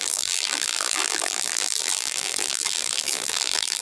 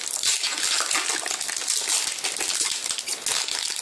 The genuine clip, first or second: second